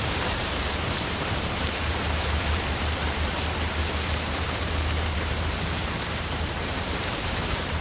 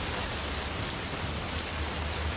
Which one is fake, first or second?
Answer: first